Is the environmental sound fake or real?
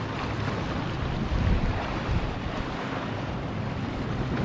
real